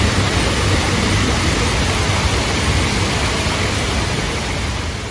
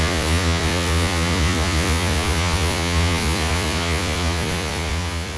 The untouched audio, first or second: first